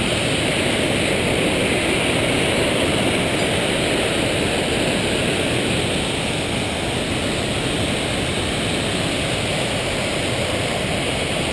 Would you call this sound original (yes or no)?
yes